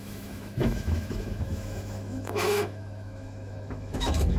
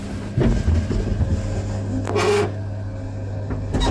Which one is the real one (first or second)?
second